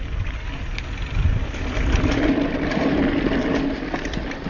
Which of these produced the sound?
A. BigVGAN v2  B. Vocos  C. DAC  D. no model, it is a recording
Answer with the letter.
D